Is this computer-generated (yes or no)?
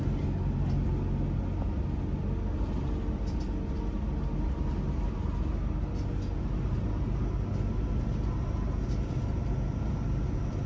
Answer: no